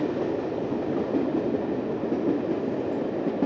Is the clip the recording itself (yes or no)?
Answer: yes